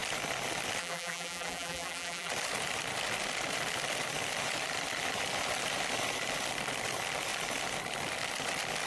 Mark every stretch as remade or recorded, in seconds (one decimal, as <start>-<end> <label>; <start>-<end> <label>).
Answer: 0.0-0.8 recorded; 0.8-2.3 remade; 2.3-8.9 recorded